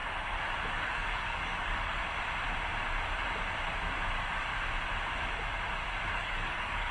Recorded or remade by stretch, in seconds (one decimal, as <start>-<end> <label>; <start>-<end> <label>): 0.0-0.7 recorded; 0.7-2.0 remade; 2.0-6.1 recorded; 6.1-6.9 remade